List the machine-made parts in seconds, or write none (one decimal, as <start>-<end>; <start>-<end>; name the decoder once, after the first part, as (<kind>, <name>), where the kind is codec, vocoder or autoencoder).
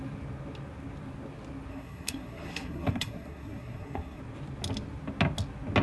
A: 1.7-4.2 (codec, SNAC)